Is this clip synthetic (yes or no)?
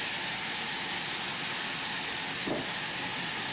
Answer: no